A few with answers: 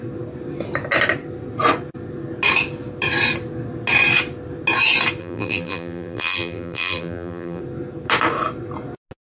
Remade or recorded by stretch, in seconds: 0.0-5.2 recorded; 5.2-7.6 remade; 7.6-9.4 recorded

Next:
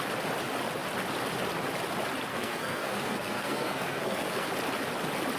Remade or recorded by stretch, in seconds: 0.0-2.3 recorded; 2.3-4.5 remade; 4.5-5.4 recorded